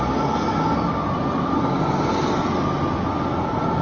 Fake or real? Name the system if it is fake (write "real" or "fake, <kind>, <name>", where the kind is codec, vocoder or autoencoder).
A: real